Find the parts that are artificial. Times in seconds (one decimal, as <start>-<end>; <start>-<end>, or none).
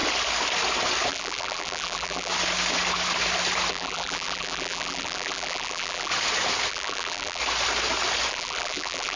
1.1-2.3; 3.7-6.1; 6.7-7.4; 8.3-9.2